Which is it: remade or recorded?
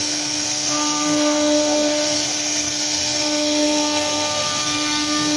remade